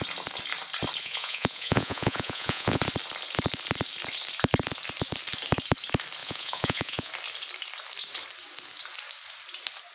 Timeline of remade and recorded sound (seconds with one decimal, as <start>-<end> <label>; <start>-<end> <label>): 0.0-1.0 recorded; 1.0-2.8 remade; 2.8-6.2 recorded; 6.2-7.1 remade; 7.1-9.9 recorded